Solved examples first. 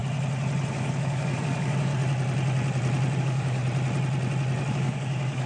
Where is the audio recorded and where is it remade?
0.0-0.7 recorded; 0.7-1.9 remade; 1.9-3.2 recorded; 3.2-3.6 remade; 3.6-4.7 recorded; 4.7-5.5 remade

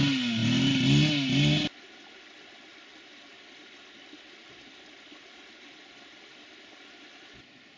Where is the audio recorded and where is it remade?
0.0-7.8 recorded

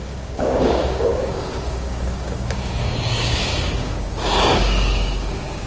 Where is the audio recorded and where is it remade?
0.0-5.7 remade

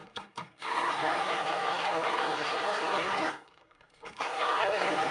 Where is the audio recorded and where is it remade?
0.0-5.1 remade

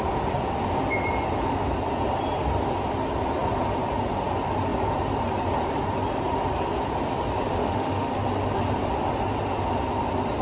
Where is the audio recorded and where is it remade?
0.0-7.6 recorded; 7.6-8.1 remade; 8.1-10.4 recorded

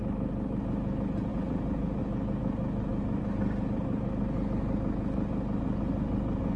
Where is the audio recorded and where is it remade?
0.0-1.3 recorded; 1.3-2.0 remade; 2.0-6.6 recorded